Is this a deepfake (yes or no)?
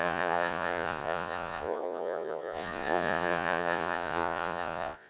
yes